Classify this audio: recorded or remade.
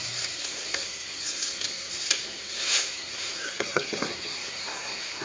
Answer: remade